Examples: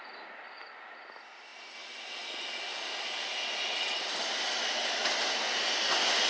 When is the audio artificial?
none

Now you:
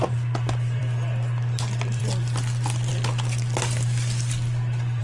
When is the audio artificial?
none

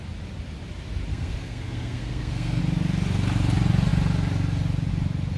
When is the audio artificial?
1.1-2.6

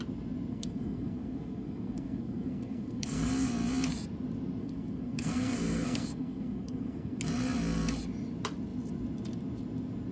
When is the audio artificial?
0.5-3.3; 4.6-7.2

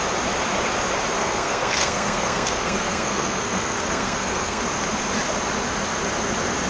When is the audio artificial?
1.2-4.6

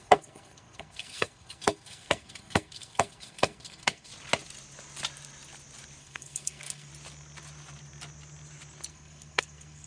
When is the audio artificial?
0.0-4.1; 6.0-6.9; 8.9-9.9

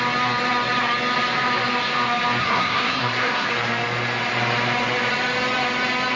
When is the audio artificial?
2.4-3.5